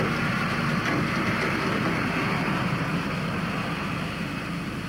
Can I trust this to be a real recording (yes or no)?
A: yes